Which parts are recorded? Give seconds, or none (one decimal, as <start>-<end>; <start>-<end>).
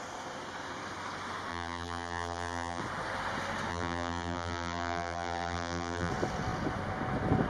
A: 0.0-1.5; 2.8-3.7; 6.1-7.5